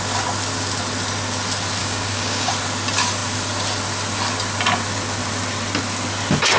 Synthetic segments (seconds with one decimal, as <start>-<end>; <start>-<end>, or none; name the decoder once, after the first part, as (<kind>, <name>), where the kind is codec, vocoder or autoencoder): 1.8-2.5 (codec, DAC)